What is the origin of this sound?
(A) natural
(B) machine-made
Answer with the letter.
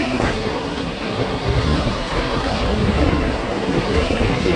B